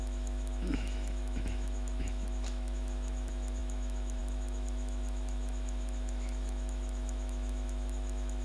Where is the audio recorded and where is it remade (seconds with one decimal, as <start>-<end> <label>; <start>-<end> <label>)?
0.0-8.4 remade